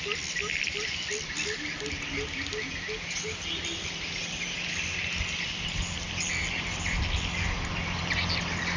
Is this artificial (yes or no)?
no